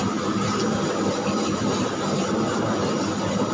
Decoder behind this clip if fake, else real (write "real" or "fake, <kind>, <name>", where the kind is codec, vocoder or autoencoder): real